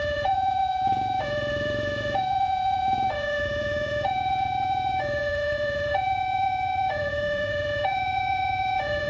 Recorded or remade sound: remade